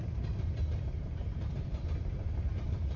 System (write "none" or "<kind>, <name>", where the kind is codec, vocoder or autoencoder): vocoder, BigVGAN v2